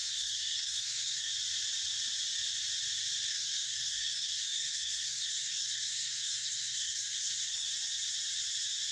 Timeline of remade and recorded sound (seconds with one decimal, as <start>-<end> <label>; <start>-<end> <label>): 0.0-1.3 remade; 1.3-3.3 recorded; 3.3-7.7 remade; 7.7-8.9 recorded